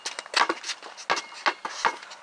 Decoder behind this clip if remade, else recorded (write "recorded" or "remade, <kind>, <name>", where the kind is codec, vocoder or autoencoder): recorded